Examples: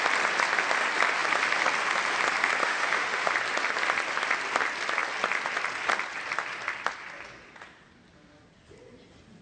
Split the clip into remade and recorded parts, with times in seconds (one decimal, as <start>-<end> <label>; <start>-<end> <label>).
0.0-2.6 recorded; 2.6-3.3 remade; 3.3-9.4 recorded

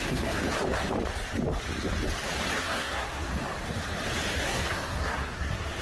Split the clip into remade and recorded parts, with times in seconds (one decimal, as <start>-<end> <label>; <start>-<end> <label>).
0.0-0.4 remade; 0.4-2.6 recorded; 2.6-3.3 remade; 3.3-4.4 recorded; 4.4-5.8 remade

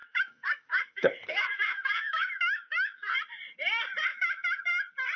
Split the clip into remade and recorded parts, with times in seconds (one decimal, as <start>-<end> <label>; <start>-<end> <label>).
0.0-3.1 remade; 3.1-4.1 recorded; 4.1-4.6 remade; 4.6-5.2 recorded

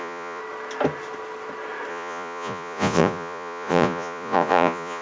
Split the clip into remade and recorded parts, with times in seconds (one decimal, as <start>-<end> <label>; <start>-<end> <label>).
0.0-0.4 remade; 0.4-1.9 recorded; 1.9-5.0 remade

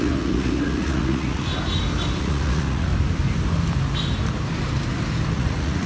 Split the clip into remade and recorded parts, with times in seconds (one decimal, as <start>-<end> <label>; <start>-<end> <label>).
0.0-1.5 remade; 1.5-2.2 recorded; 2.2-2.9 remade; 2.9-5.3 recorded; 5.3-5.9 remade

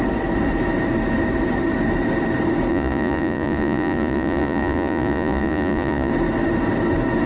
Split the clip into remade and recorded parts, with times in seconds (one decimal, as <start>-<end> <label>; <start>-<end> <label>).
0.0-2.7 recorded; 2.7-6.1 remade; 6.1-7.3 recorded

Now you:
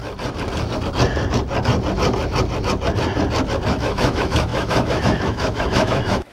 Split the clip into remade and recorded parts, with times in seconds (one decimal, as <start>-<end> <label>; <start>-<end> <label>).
0.0-3.7 recorded; 3.7-6.3 remade